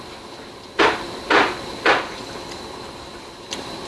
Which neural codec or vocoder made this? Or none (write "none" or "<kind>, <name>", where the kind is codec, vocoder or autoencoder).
none